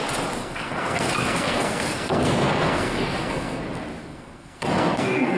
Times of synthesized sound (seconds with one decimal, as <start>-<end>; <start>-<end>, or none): 0.4-3.6; 4.0-5.4